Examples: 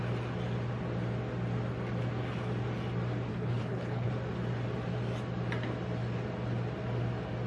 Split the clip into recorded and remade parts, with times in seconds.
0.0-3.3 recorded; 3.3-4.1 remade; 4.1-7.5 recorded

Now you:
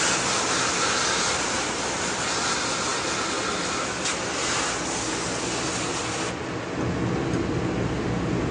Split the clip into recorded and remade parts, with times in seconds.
0.0-8.5 recorded

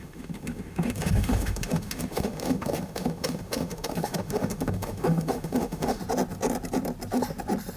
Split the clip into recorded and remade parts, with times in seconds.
0.0-6.0 remade; 6.0-7.8 recorded

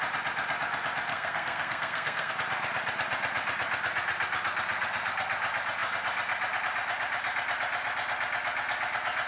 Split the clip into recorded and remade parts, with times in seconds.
0.0-1.1 recorded; 1.1-2.3 remade; 2.3-9.3 recorded

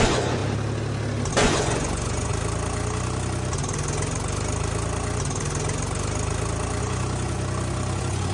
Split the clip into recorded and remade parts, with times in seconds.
0.0-0.4 remade; 0.4-1.3 recorded; 1.3-2.3 remade; 2.3-6.8 recorded; 6.8-8.3 remade